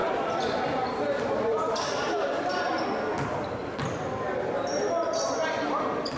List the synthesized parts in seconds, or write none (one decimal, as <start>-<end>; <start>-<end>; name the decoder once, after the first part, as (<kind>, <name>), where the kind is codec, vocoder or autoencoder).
0.0-2.7 (vocoder, BigVGAN v2); 3.6-4.7